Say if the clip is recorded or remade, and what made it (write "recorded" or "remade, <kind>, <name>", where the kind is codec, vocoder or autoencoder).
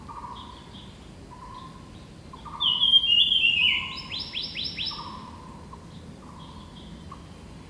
recorded